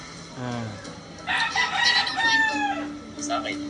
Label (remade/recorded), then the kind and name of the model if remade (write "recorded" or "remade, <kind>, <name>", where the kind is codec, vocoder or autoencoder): recorded